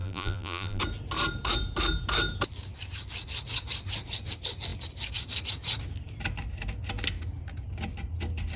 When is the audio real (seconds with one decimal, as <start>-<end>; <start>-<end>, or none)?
0.8-8.6